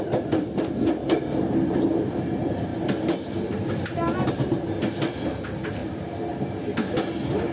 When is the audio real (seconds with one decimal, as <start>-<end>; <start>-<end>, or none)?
0.0-1.0; 1.9-2.7; 3.6-5.8; 6.6-7.5